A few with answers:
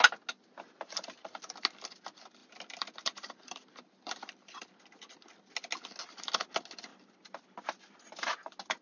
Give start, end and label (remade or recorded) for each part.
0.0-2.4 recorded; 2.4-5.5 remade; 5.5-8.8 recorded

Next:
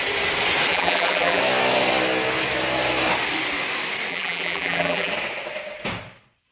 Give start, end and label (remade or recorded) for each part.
0.0-0.7 recorded; 0.7-1.4 remade; 1.4-4.1 recorded; 4.1-5.1 remade; 5.1-6.5 recorded